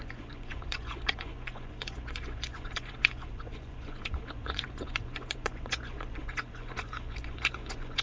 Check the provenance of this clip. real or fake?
fake